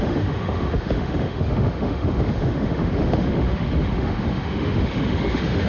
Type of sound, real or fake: fake